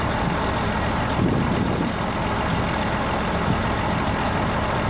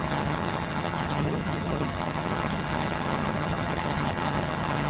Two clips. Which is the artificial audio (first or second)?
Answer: second